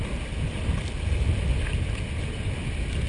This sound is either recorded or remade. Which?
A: recorded